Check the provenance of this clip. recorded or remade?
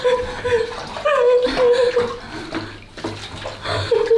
recorded